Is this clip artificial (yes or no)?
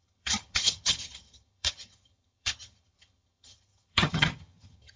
yes